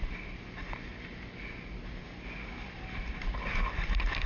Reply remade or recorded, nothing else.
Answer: recorded